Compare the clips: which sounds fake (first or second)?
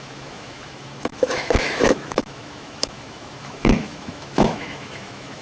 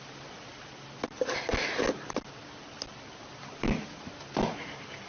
first